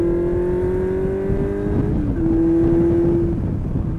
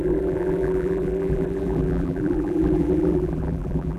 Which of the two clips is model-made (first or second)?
second